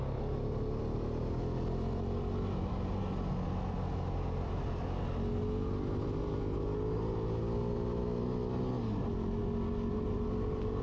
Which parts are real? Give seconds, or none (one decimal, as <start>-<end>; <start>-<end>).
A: 0.0-10.8